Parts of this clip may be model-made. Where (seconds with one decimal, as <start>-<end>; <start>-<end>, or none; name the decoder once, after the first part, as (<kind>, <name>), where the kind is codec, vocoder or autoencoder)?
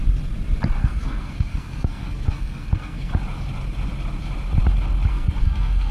0.8-3.1 (codec, SNAC); 5.1-5.9